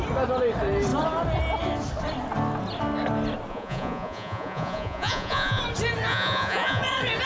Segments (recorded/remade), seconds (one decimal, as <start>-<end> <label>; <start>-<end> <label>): 0.0-3.5 recorded; 3.5-5.6 remade; 5.6-6.1 recorded; 6.1-6.8 remade; 6.8-7.3 recorded